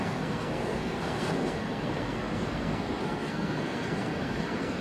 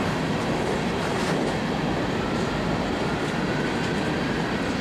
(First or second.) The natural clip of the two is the second